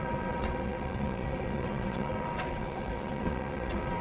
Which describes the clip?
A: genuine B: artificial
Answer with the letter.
B